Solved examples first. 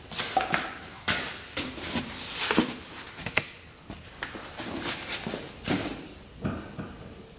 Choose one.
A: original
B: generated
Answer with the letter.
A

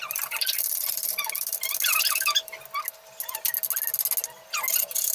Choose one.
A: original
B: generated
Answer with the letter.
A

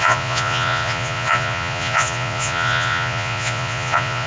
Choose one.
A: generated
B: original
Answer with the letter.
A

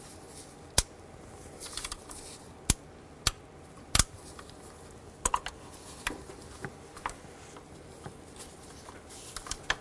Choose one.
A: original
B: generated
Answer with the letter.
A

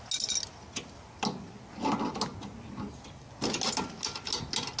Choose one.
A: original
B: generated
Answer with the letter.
A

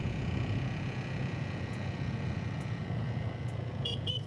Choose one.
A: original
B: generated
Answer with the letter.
B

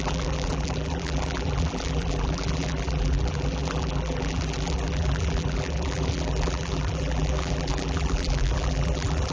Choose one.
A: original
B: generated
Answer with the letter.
B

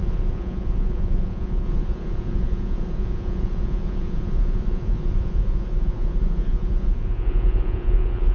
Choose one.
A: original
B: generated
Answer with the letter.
B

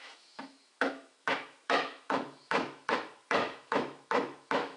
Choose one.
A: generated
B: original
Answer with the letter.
A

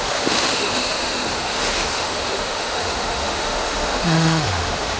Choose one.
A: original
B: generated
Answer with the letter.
B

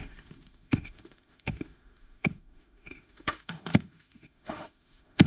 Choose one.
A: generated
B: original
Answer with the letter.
A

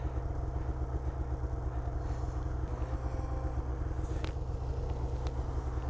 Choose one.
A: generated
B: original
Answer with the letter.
B